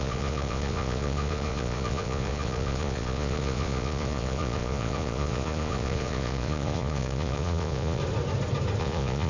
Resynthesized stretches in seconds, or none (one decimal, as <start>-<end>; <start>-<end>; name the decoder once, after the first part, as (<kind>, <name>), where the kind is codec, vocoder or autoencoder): 0.0-8.0 (vocoder, Vocos); 8.8-9.3